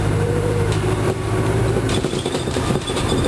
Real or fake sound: fake